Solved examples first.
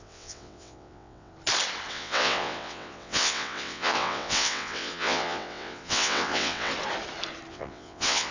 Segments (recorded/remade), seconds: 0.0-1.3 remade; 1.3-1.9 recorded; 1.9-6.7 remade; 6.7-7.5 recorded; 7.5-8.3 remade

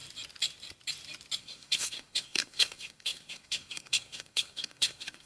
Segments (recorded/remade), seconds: 0.0-1.4 recorded; 1.4-5.3 remade

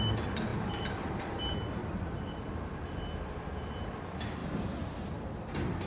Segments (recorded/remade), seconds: 0.0-0.5 recorded; 0.5-1.4 remade; 1.4-1.8 recorded; 1.8-2.5 remade; 2.5-4.4 recorded; 4.4-5.9 remade

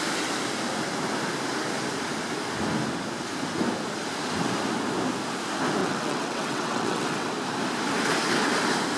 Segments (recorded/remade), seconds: 0.0-5.8 recorded; 5.8-7.3 remade; 7.3-9.0 recorded

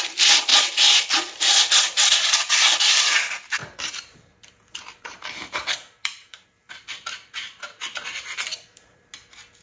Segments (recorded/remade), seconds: 0.0-3.6 recorded; 3.6-6.7 remade; 6.7-7.6 recorded; 7.6-9.1 remade; 9.1-9.6 recorded

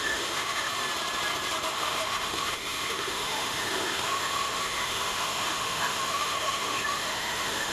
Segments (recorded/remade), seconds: 0.0-0.7 remade; 0.7-1.7 recorded; 1.7-7.7 remade

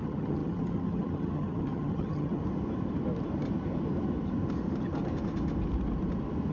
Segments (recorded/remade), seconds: 0.0-2.4 remade; 2.4-6.5 recorded